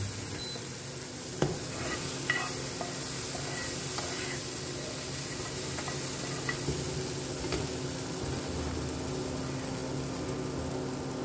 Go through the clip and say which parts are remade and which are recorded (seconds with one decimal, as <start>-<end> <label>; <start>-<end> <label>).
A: 0.0-11.2 recorded